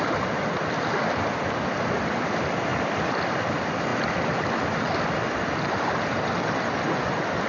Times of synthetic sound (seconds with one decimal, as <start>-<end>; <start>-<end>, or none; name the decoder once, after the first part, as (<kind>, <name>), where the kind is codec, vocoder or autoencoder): none